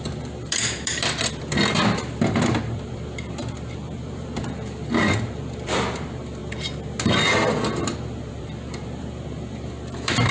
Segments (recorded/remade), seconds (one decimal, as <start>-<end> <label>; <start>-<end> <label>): 0.0-6.4 remade; 6.4-7.3 recorded; 7.3-10.3 remade